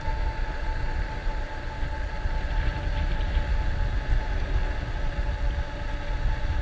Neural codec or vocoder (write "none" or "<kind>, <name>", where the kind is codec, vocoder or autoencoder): none